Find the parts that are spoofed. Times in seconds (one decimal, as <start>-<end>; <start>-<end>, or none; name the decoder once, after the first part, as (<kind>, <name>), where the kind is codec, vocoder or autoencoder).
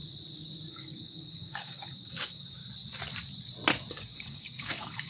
0.7-2.6 (codec, DAC); 3.9-5.1